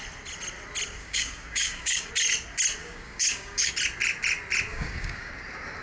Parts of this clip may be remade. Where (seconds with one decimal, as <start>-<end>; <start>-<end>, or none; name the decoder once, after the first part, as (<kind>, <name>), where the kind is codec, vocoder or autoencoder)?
1.0-2.1 (codec, DAC); 2.8-3.7; 4.7-5.3